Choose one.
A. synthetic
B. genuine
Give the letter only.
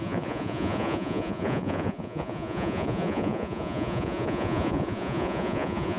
A